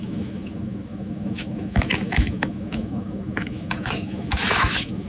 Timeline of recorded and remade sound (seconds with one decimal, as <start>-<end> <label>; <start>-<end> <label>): 0.0-5.1 remade

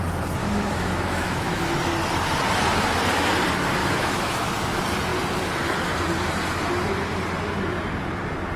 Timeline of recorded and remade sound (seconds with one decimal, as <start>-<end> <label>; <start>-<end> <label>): 0.0-0.4 recorded; 0.4-1.6 remade; 1.6-3.8 recorded; 3.8-4.5 remade; 4.5-8.6 recorded

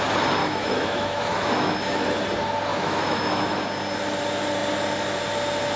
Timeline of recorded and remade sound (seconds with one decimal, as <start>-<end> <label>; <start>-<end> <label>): 0.0-0.4 recorded; 0.4-1.8 remade; 1.8-2.7 recorded; 2.7-3.6 remade; 3.6-5.8 recorded

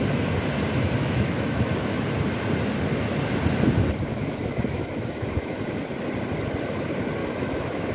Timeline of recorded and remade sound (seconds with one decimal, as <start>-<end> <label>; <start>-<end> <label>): 0.0-1.0 recorded; 1.0-2.0 remade; 2.0-4.1 recorded; 4.1-5.8 remade; 5.8-7.2 recorded; 7.2-7.9 remade